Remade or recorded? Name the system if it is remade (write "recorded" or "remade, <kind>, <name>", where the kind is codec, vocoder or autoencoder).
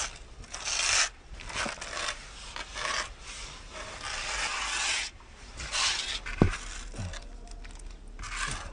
recorded